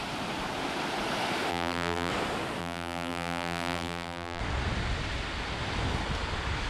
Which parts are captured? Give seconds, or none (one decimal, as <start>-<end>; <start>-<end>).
0.0-1.5; 2.1-2.6; 4.4-6.7